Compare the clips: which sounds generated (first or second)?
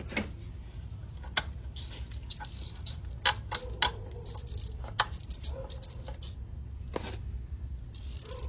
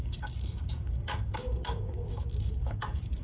second